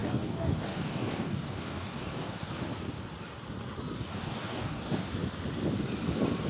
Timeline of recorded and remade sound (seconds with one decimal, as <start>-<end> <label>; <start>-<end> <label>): 0.0-2.5 remade; 2.5-4.1 recorded; 4.1-5.1 remade; 5.1-6.5 recorded